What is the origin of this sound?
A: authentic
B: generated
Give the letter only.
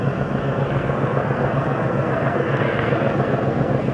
B